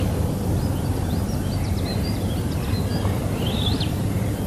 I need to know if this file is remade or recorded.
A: remade